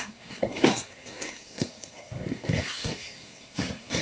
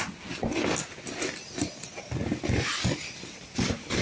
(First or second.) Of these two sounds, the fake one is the first